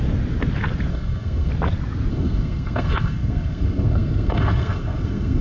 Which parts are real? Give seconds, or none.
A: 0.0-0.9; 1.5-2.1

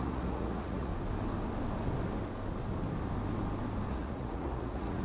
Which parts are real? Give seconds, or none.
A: 0.9-3.9

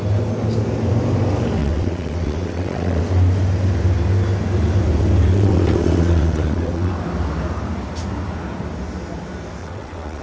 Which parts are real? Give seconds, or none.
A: 0.0-1.6; 3.0-5.3; 6.9-9.6

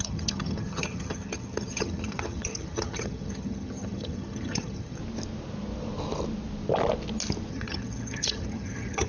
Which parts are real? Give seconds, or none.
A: 5.0-7.5

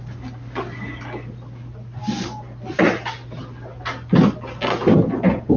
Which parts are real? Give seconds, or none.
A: 0.0-5.6

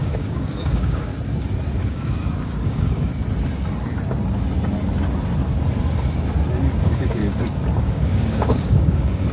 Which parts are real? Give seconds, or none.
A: 1.1-1.8; 3.1-6.8; 7.2-7.8

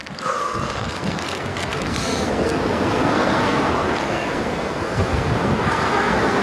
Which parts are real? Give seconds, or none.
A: none